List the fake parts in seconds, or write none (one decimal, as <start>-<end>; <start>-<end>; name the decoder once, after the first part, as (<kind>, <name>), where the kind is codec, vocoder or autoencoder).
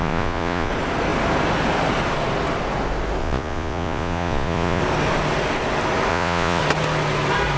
0.0-0.7 (vocoder, Vocos); 3.2-4.8; 6.1-6.6